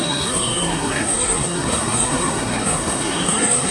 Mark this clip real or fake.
fake